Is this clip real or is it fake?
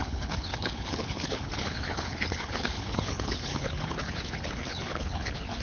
fake